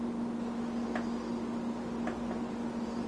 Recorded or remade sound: recorded